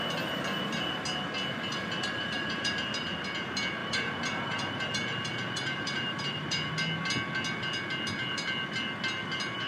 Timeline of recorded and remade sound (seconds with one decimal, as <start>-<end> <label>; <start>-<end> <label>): 0.0-1.7 recorded; 1.7-2.8 remade; 2.8-3.8 recorded; 3.8-6.7 remade; 6.7-9.7 recorded